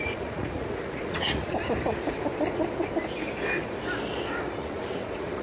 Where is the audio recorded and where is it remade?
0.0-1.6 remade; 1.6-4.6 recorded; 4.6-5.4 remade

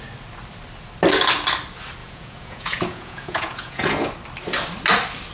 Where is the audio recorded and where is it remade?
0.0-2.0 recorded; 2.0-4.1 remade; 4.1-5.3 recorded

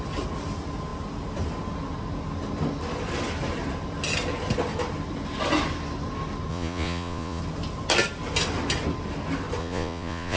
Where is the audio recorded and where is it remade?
0.0-6.5 recorded; 6.5-7.4 remade; 7.4-9.6 recorded; 9.6-10.4 remade

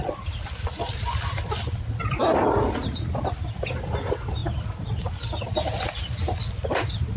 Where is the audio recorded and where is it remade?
0.0-7.2 recorded